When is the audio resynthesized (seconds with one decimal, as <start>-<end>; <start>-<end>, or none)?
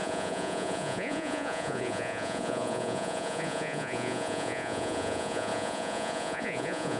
0.0-7.0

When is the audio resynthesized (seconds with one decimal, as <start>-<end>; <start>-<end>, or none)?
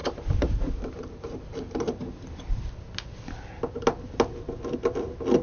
0.0-2.6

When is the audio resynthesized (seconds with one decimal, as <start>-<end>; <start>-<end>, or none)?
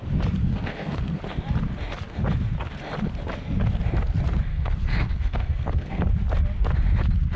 0.4-1.2; 4.5-6.1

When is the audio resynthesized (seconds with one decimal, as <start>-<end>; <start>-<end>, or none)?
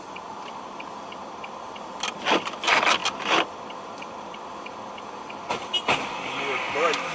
none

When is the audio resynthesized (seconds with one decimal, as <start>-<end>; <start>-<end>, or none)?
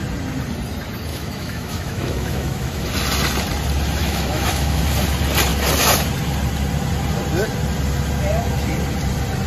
1.1-2.9; 4.0-4.8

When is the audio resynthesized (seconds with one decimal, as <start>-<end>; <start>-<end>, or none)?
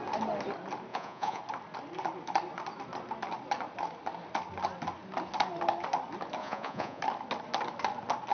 0.9-1.4; 6.4-7.0